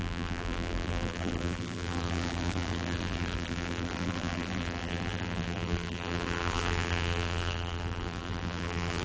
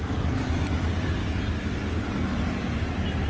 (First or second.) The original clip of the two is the second